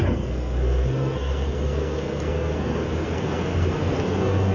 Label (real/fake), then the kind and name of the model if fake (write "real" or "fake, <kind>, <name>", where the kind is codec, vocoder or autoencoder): fake, codec, SNAC